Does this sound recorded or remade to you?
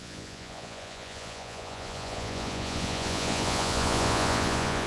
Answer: remade